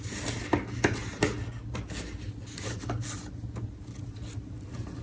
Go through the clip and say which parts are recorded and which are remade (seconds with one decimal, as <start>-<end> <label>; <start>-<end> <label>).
0.0-5.0 recorded